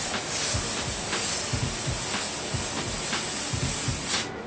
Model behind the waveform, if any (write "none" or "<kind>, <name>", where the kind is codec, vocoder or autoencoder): none